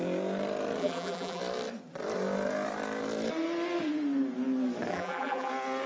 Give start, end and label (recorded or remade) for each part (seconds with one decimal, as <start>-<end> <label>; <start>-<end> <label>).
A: 0.0-0.8 recorded; 0.8-1.4 remade; 1.4-4.9 recorded; 4.9-5.5 remade; 5.5-5.9 recorded